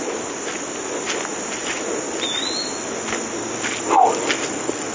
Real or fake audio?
real